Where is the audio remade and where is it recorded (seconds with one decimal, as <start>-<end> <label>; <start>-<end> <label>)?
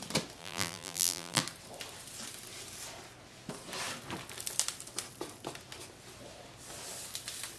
0.0-0.4 recorded; 0.4-1.4 remade; 1.4-7.6 recorded